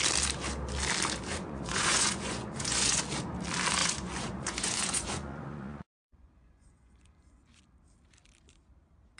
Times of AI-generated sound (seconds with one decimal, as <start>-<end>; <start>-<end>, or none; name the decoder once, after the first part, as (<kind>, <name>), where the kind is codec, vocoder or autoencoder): 1.3-3.0 (vocoder, Vocos); 3.8-7.6